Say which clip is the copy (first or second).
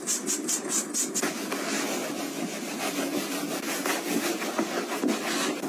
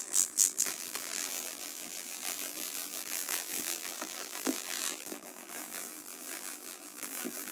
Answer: second